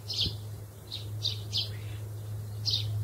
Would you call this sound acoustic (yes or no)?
yes